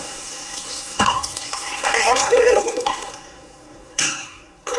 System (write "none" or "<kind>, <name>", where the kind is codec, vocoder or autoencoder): codec, SNAC